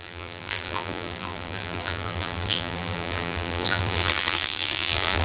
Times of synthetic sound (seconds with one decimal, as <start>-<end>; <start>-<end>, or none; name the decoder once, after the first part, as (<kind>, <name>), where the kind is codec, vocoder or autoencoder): 0.0-5.2 (vocoder, BigVGAN v2)